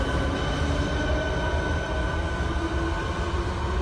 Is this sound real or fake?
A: real